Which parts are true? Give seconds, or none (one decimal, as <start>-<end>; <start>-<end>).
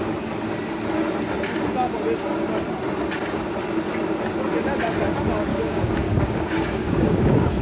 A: 0.0-5.5